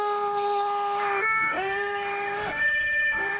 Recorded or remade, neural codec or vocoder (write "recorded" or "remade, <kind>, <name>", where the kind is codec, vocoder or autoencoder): remade, autoencoder, DAC-VAE